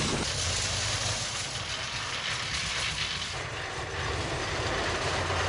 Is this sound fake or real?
real